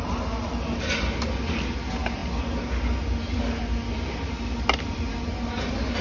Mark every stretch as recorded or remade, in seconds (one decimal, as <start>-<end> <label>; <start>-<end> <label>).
0.0-6.0 recorded